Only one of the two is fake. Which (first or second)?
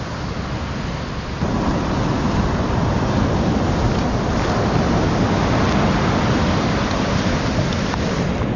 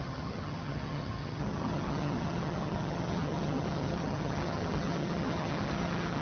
second